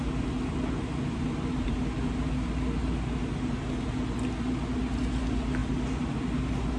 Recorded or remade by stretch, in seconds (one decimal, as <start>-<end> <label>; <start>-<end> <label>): 0.0-6.8 recorded